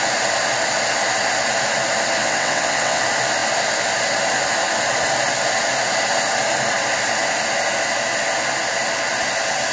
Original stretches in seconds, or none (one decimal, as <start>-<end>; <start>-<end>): 0.0-2.2; 3.0-9.7